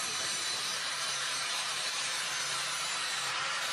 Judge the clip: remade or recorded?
remade